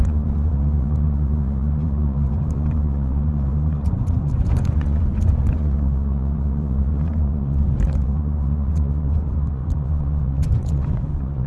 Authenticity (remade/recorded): remade